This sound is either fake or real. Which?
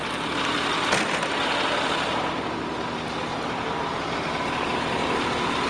real